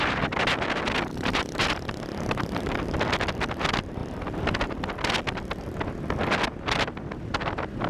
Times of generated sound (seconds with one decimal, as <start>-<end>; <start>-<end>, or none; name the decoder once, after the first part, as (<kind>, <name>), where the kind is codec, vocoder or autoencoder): 4.0-4.9 (vocoder, BigVGAN v2)